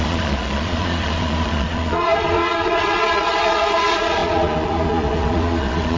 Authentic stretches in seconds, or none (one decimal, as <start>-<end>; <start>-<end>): none